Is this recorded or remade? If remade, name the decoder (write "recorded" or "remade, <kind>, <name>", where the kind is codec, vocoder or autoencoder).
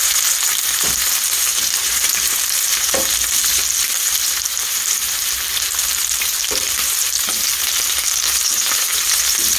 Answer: remade, vocoder, BigVGAN v2